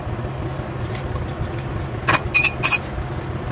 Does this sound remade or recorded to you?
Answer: remade